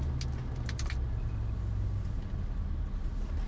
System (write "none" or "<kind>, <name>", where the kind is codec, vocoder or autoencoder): none